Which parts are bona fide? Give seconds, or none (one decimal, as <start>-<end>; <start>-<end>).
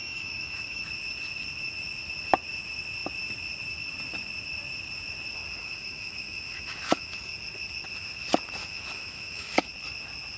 0.9-5.6; 7.3-8.6; 9.7-10.4